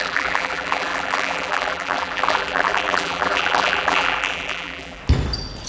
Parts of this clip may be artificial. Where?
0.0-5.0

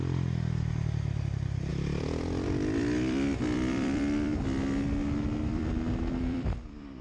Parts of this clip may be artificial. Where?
1.7-4.3; 5.0-7.0

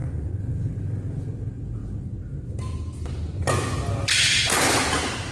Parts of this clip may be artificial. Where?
0.0-0.5

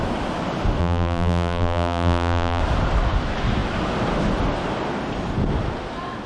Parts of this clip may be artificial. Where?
0.8-2.6

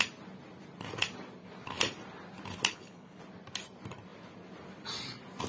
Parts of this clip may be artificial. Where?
2.7-3.2

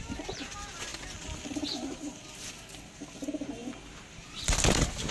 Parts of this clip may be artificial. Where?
none